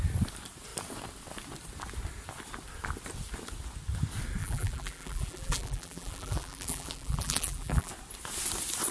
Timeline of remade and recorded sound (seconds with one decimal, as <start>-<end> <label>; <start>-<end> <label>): 0.0-4.4 recorded; 4.4-7.9 remade; 7.9-8.9 recorded